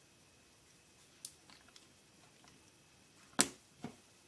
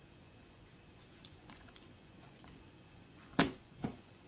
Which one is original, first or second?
first